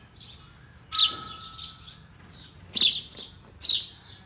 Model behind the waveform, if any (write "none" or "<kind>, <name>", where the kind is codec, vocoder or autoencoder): none